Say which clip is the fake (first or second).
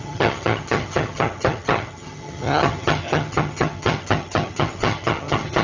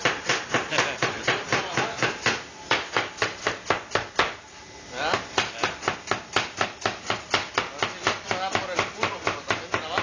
first